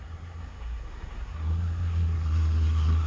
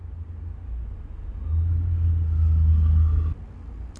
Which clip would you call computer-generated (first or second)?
first